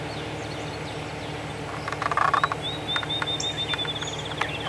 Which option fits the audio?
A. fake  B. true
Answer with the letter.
B